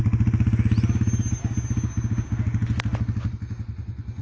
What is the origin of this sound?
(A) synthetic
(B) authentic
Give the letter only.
B